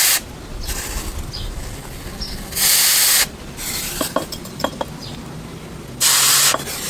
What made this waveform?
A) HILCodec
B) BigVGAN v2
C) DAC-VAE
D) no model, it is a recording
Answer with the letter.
D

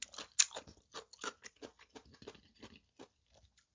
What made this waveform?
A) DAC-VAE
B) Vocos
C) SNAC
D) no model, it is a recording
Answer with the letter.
D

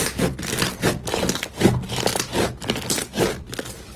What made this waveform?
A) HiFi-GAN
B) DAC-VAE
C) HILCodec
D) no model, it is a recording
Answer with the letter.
D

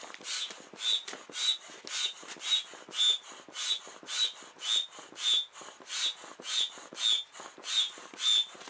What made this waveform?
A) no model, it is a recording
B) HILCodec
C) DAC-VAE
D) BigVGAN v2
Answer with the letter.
A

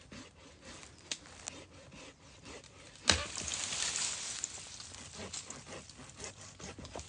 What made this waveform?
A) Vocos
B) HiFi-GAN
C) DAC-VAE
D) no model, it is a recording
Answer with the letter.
D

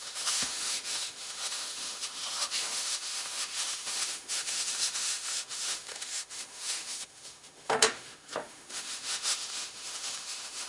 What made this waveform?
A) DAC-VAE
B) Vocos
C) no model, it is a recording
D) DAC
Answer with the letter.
A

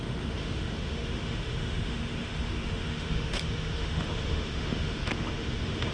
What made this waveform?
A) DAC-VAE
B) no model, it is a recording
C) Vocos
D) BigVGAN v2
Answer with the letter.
A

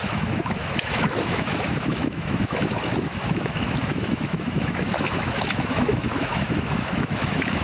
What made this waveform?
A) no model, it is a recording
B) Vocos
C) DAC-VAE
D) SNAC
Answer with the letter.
C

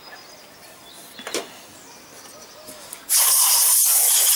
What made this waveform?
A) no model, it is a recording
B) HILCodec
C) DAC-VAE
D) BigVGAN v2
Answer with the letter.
A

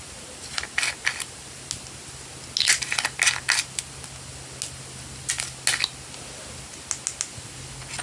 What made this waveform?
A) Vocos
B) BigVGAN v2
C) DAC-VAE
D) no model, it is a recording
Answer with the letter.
D